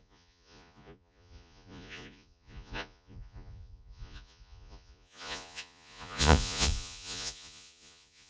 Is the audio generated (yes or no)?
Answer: yes